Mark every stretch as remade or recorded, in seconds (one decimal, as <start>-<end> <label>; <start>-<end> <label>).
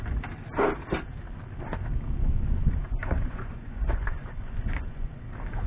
0.0-2.2 recorded; 2.2-5.2 remade; 5.2-5.7 recorded